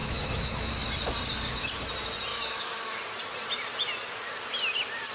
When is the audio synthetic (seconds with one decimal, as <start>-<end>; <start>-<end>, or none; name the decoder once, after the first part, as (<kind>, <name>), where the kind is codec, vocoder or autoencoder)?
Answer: 0.0-0.7 (autoencoder, DAC-VAE); 2.3-3.0